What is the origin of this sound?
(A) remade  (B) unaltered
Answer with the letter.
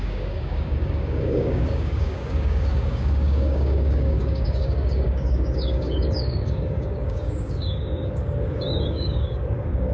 A